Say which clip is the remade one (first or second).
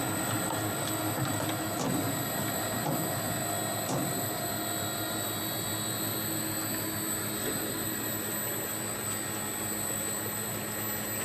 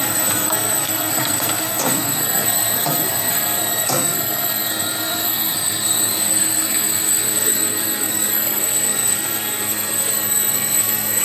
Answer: second